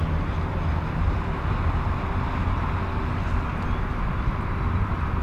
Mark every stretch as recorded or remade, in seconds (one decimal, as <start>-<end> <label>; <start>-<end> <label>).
0.0-5.2 recorded